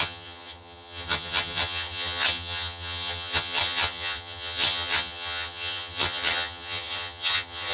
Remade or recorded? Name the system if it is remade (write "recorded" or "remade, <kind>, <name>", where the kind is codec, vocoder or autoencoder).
remade, vocoder, HiFi-GAN